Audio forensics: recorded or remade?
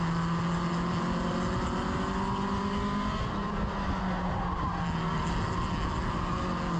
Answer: recorded